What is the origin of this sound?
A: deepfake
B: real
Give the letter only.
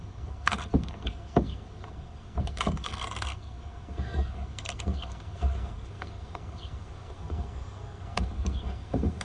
A